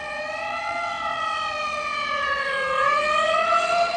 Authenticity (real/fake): fake